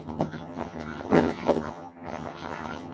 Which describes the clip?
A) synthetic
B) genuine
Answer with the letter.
A